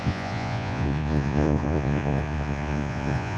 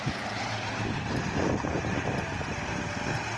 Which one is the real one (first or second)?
second